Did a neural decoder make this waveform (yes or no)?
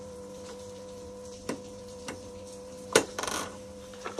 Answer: yes